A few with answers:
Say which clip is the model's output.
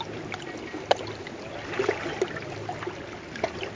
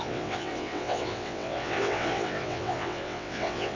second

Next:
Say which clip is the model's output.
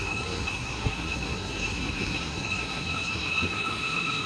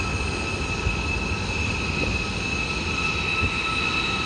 first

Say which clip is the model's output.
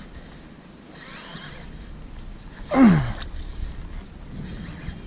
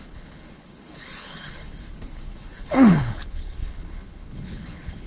second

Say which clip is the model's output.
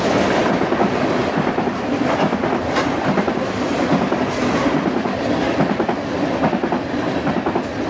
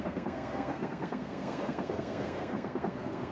second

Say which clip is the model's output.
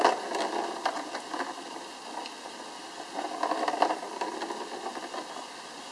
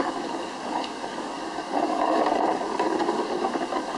second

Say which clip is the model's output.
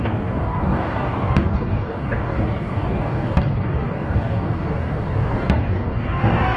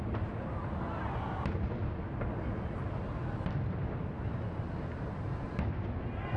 first